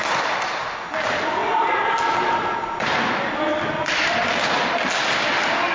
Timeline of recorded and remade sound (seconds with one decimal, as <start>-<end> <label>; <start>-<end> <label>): 0.0-5.7 recorded